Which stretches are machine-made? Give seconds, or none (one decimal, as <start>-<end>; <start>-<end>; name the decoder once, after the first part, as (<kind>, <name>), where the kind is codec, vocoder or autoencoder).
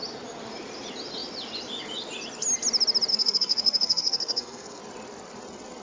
3.1-4.8 (codec, SNAC)